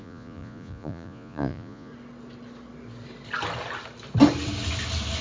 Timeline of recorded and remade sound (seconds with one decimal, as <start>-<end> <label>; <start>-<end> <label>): 0.0-1.9 remade; 1.9-5.2 recorded